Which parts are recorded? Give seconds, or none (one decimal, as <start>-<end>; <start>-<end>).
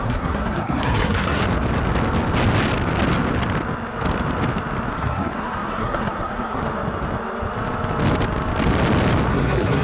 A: 1.4-4.9; 6.6-9.3